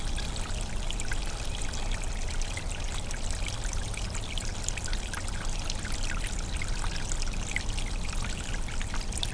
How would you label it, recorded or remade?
recorded